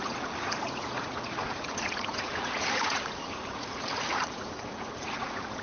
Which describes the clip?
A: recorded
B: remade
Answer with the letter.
B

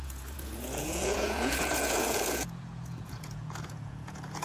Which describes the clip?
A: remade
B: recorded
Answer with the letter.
A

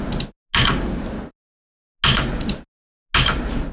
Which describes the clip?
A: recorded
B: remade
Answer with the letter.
A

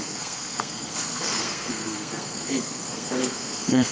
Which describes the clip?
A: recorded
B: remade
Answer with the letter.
B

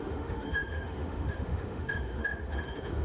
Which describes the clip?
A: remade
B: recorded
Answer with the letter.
A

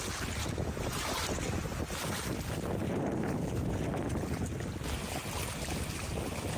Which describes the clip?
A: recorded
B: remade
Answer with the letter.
A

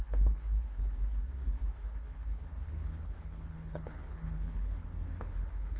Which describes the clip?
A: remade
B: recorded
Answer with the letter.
A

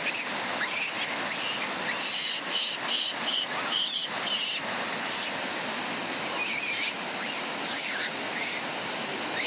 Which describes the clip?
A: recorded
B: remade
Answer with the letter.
A